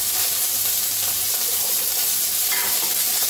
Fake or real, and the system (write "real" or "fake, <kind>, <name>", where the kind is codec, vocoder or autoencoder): fake, vocoder, BigVGAN v2